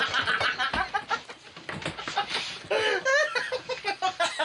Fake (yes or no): no